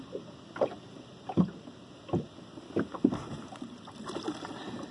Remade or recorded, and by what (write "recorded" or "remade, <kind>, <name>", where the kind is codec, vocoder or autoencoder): recorded